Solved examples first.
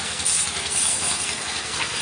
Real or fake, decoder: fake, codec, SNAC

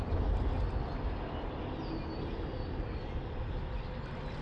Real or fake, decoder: real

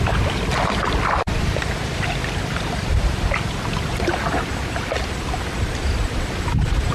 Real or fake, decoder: real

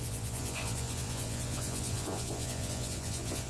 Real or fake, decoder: fake, vocoder, Vocos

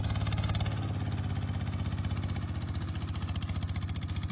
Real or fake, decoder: real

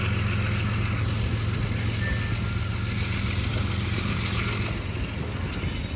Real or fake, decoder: real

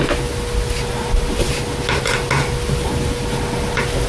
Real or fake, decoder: real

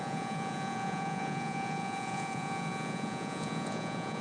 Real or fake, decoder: fake, vocoder, Vocos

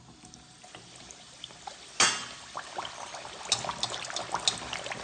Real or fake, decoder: real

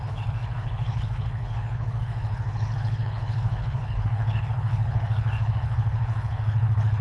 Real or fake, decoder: fake, codec, HILCodec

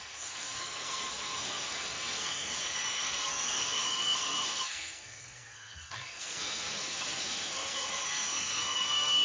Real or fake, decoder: fake, codec, SNAC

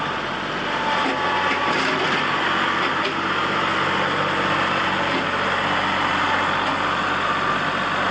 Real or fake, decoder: real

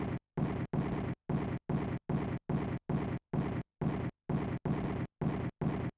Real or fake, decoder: real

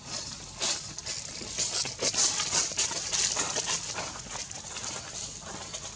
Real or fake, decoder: real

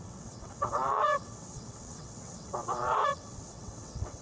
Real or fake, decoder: fake, vocoder, WaveNeXt